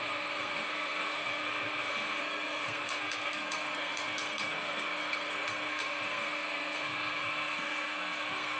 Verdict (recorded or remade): remade